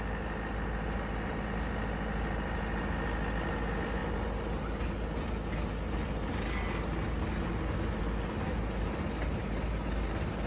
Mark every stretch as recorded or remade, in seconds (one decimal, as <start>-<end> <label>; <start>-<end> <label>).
0.0-10.5 recorded

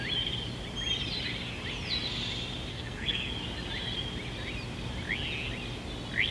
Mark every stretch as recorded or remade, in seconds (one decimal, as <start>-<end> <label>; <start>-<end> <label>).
0.0-2.7 recorded; 2.7-3.3 remade; 3.3-6.3 recorded

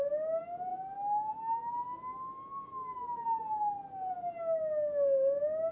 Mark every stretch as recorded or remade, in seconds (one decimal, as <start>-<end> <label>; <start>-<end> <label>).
0.0-5.7 recorded

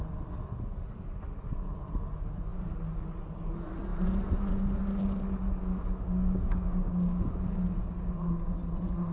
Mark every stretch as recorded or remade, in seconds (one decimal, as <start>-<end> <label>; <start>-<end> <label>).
0.0-5.7 recorded; 5.7-7.3 remade; 7.3-9.1 recorded

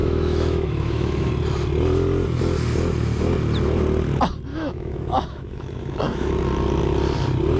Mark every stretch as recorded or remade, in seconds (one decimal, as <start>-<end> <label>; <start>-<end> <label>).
0.0-1.3 remade; 1.3-4.5 recorded; 4.5-6.3 remade; 6.3-7.6 recorded